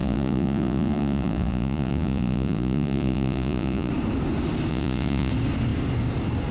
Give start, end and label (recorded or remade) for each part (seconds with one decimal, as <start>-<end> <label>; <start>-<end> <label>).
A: 0.0-3.9 remade; 3.9-4.7 recorded; 4.7-5.3 remade; 5.3-6.5 recorded